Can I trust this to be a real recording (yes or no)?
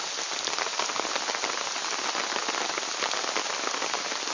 yes